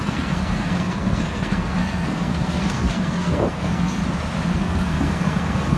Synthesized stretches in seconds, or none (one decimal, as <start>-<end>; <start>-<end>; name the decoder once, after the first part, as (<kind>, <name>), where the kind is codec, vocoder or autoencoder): 0.0-4.0 (codec, SNAC); 4.5-5.8